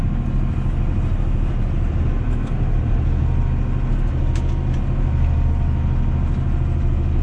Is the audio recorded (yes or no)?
yes